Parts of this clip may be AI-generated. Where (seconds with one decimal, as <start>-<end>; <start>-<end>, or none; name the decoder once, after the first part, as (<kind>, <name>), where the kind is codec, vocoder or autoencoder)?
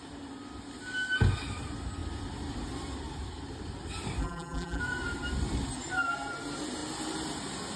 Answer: 4.2-4.8 (vocoder, BigVGAN v2)